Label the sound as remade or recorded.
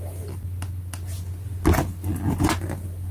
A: recorded